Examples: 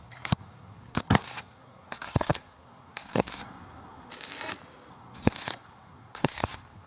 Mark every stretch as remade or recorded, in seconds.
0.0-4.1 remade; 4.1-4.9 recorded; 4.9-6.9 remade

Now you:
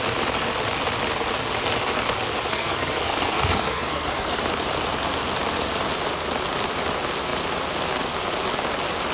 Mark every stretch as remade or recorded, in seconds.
0.0-2.5 recorded; 2.5-4.4 remade; 4.4-9.1 recorded

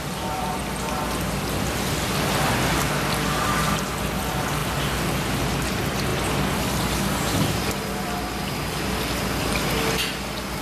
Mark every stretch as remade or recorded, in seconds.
0.0-10.6 recorded